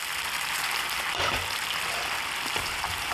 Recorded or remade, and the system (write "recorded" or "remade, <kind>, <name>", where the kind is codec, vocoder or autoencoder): remade, vocoder, BigVGAN v2